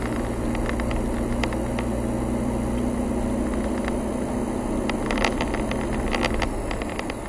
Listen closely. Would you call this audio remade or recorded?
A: recorded